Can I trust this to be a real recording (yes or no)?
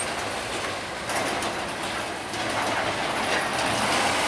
yes